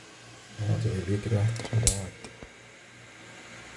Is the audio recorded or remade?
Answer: recorded